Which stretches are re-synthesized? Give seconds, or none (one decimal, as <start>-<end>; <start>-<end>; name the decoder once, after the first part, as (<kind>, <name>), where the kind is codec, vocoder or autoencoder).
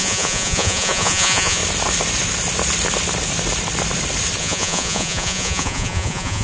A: 0.0-1.6 (vocoder, Vocos); 4.4-6.4